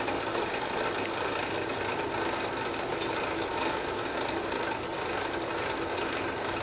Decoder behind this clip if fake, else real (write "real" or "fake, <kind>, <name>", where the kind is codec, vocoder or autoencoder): real